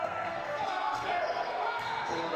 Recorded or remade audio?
remade